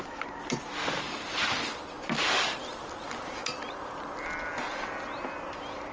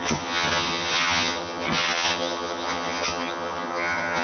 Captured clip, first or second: first